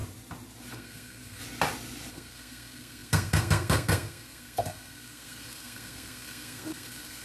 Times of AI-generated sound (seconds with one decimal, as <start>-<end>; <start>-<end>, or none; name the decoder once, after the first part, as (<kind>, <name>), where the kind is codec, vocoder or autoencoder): 0.7-1.4 (codec, SNAC); 2.1-7.2